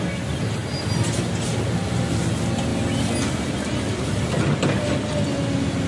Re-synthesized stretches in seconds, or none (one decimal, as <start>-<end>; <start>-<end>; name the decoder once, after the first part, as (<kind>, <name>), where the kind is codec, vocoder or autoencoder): none